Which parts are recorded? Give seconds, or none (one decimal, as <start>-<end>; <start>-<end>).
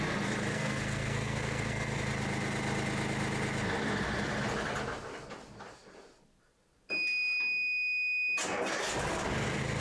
0.0-0.5; 2.0-9.8